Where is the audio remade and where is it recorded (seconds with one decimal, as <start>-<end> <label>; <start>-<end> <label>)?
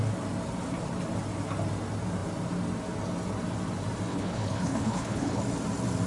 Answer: 0.0-4.1 recorded; 4.1-5.4 remade; 5.4-6.1 recorded